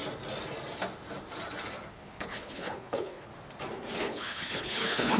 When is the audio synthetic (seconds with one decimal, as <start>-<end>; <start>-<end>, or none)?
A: 1.9-3.3; 4.0-5.2